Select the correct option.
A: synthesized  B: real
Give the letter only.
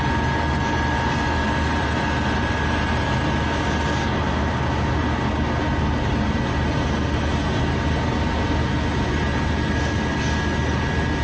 B